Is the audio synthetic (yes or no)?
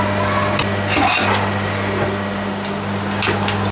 no